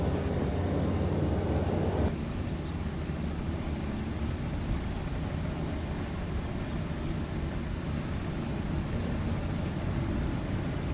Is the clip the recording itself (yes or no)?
yes